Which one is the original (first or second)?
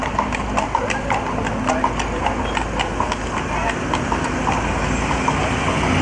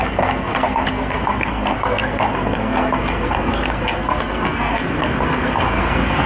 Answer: first